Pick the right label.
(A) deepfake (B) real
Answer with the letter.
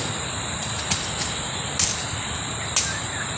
B